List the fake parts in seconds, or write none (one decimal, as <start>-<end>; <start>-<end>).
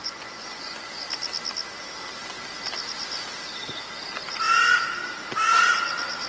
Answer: 0.0-0.9